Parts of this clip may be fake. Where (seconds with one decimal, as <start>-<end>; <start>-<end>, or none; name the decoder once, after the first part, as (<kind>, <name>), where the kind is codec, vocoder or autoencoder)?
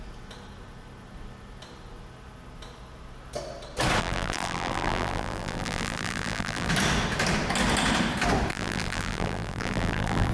4.0-6.7 (vocoder, BigVGAN v2); 8.5-10.3